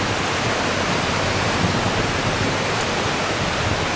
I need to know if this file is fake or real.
real